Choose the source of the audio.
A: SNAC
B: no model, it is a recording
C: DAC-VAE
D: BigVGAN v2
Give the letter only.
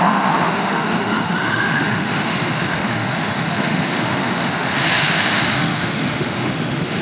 C